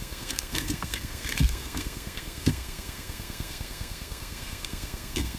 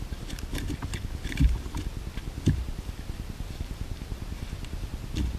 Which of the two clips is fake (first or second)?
first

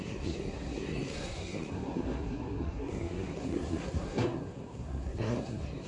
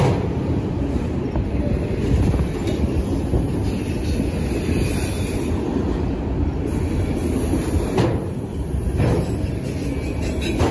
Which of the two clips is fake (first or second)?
first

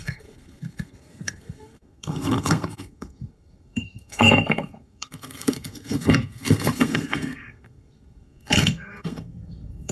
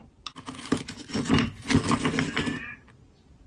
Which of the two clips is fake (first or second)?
first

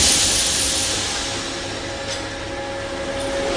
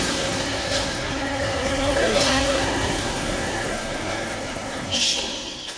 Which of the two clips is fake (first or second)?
second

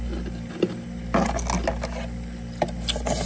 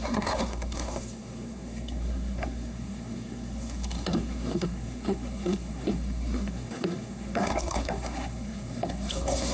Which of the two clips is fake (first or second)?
second